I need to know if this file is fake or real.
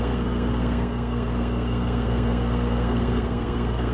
fake